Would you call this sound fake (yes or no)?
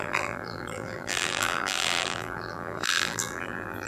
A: yes